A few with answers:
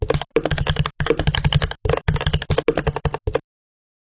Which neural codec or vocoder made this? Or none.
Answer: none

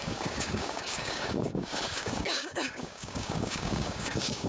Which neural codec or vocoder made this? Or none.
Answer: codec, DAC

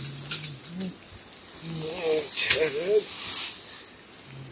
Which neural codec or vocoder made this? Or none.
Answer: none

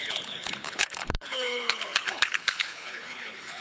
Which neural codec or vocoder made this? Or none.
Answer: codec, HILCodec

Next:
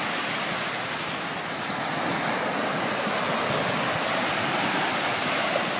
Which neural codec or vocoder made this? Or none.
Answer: none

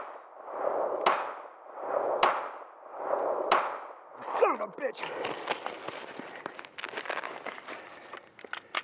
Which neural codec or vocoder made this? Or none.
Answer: none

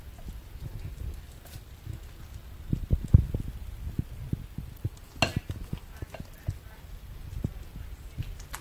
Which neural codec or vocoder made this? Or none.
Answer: none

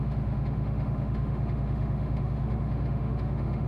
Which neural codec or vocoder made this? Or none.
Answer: autoencoder, DAC-VAE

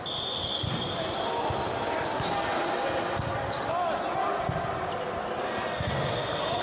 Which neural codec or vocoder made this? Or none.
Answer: none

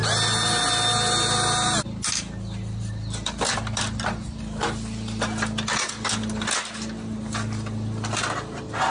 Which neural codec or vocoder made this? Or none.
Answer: none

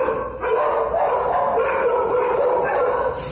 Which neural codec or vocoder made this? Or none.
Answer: none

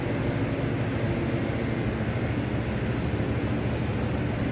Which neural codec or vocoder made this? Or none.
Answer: none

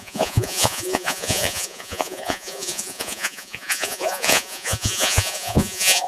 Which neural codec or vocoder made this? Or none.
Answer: vocoder, Vocos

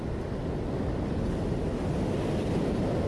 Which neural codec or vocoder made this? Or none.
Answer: none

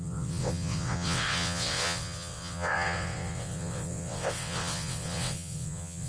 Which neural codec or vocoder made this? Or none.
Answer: vocoder, WaveNeXt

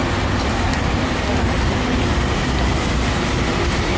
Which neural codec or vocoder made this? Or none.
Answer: none